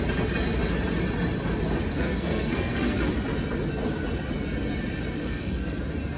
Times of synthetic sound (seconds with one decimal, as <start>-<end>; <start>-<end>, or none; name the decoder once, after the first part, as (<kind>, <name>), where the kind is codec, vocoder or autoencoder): 1.9-3.0 (codec, SNAC); 5.2-5.8